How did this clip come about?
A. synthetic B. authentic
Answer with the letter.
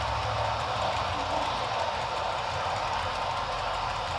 B